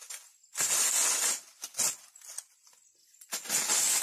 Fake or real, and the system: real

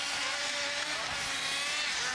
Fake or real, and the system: real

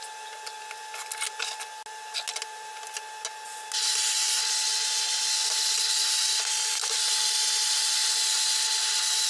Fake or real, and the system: real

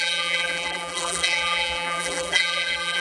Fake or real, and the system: fake, vocoder, BigVGAN v2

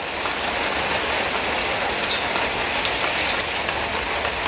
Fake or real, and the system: real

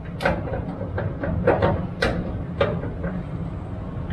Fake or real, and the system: real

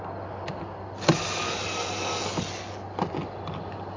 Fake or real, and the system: real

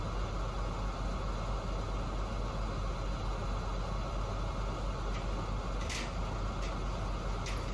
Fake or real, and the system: real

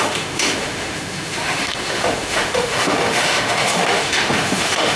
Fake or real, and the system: fake, autoencoder, DAC-VAE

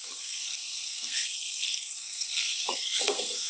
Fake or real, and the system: fake, codec, SNAC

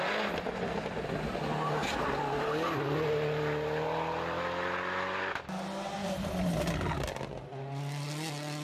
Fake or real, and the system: real